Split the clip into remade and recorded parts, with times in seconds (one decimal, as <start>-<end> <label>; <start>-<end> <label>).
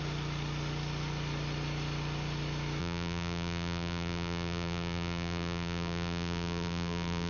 0.0-2.8 recorded; 2.8-7.3 remade